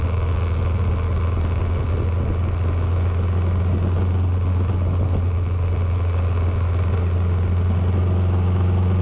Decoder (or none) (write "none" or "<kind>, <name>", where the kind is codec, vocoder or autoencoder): none